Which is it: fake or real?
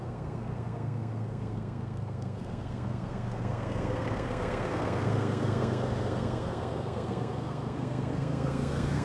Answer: fake